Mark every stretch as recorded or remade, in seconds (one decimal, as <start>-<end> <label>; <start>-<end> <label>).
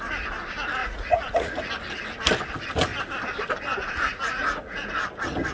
0.0-0.8 recorded; 0.8-1.6 remade; 1.6-4.1 recorded; 4.1-5.0 remade; 5.0-5.5 recorded